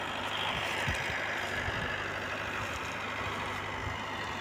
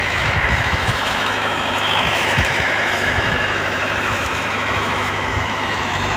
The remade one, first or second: second